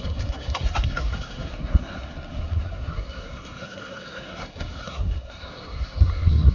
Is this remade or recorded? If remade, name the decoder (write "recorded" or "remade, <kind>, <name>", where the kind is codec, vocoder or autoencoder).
remade, codec, SNAC